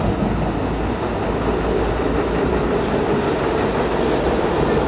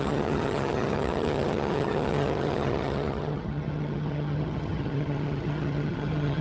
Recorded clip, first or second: first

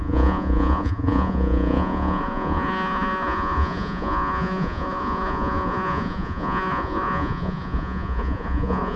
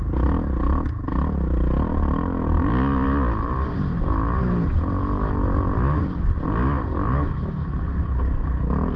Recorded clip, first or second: second